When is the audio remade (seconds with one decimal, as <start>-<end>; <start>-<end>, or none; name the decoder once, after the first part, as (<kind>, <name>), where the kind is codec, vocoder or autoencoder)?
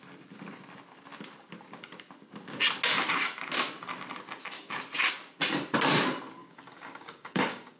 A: 6.4-7.8 (codec, DAC)